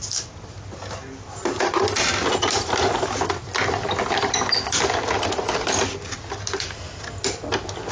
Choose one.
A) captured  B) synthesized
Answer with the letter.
A